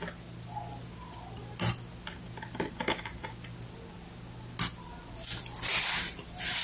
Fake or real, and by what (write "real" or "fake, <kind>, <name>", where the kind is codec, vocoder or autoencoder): real